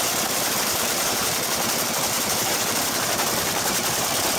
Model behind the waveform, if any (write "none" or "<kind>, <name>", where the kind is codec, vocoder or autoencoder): vocoder, BigVGAN v2